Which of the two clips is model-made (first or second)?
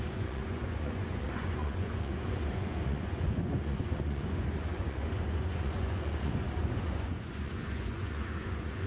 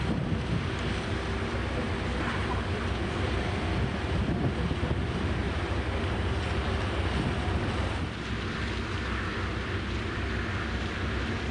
first